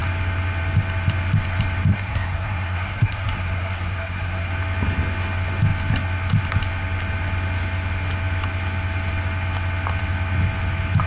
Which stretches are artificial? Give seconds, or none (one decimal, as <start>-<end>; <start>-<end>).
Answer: 1.9-4.5